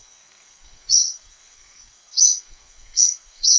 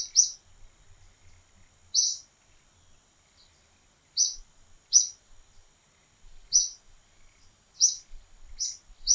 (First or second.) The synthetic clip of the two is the first